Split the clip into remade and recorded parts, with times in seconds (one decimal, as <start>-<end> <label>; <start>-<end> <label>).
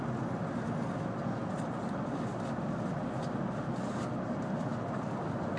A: 0.0-5.6 recorded